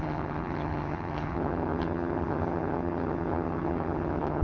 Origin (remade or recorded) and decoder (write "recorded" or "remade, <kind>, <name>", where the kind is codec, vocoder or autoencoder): remade, vocoder, HiFi-GAN